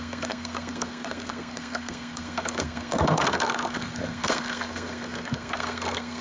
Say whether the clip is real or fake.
fake